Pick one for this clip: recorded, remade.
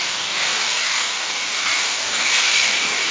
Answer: remade